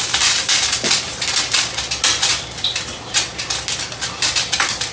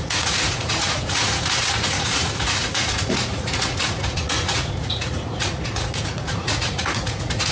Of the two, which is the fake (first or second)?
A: second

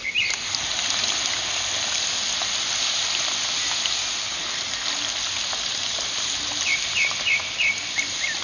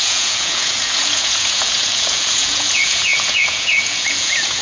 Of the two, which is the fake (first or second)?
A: second